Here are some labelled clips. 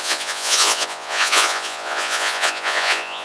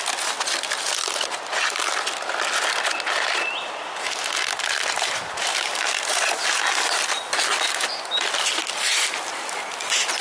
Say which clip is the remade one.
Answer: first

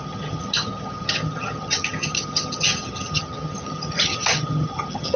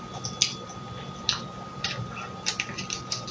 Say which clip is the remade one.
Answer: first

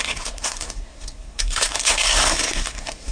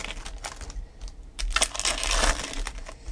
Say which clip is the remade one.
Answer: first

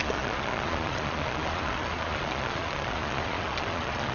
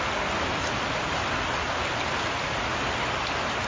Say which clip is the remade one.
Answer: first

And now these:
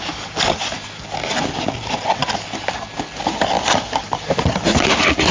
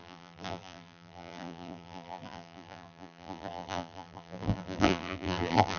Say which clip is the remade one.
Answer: second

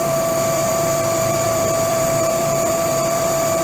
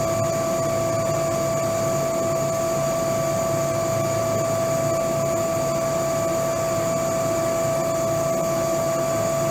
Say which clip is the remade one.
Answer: first